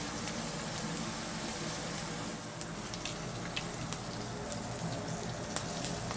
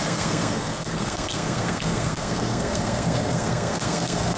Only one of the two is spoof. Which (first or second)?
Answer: second